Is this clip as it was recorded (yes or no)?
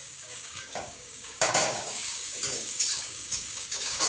no